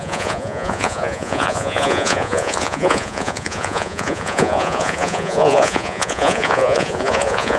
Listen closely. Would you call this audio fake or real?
fake